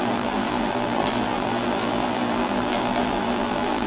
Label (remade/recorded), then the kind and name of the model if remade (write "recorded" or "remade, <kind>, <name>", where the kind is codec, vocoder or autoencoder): remade, vocoder, BigVGAN v2